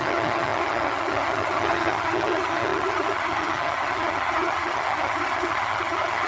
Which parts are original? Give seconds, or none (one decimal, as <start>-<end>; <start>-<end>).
none